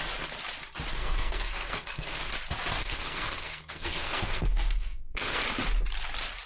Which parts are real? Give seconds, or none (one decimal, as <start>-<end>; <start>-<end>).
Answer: 0.0-1.0; 2.3-2.8; 5.4-6.5